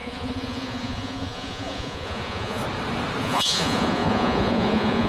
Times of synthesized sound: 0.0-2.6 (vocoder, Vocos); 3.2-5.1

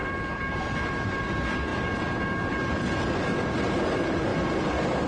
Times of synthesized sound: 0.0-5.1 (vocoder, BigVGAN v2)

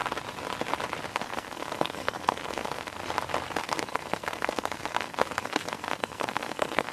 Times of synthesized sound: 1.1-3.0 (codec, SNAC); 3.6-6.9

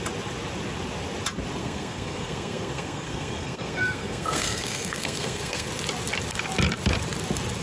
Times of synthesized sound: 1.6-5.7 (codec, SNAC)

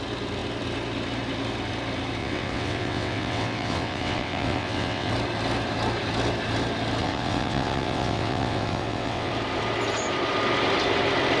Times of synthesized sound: 2.2-5.1 (vocoder, WaveNeXt); 7.0-9.3

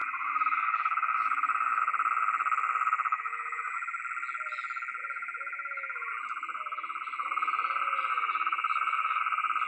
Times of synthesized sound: 0.0-1.8 (autoencoder, DAC-VAE); 3.1-4.0; 5.0-6.1; 8.1-9.2

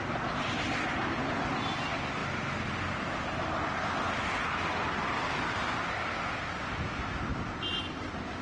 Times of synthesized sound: none